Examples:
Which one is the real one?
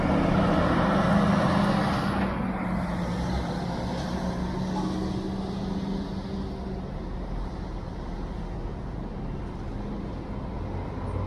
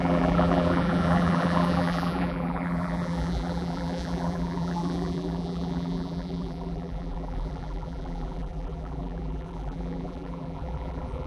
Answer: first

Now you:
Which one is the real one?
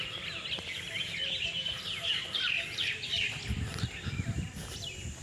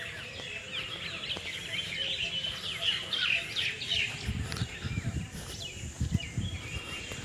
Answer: second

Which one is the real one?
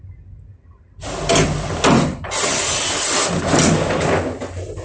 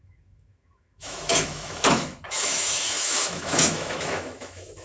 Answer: first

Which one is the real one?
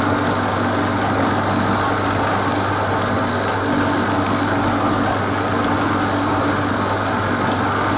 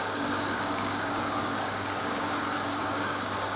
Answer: first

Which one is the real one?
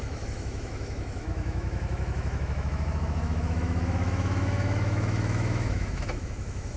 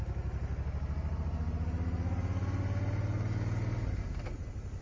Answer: second